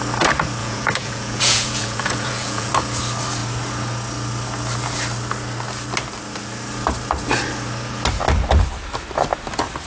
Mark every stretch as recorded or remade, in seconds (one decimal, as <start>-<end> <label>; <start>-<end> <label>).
0.0-0.6 recorded; 0.6-2.7 remade; 2.7-9.9 recorded